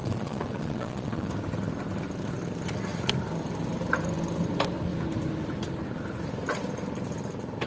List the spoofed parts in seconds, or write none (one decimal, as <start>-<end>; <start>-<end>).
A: 0.0-1.3